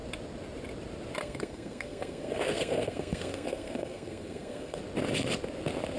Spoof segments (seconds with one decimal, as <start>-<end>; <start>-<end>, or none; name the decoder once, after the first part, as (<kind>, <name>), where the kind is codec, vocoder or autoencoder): 1.2-4.8 (codec, SNAC)